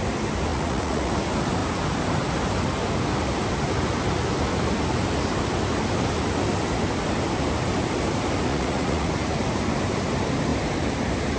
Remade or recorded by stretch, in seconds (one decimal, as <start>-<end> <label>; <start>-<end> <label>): 0.0-0.5 recorded; 0.5-1.1 remade; 1.1-8.5 recorded; 8.5-9.1 remade; 9.1-11.4 recorded